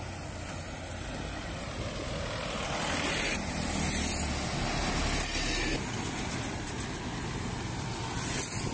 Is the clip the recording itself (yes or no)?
yes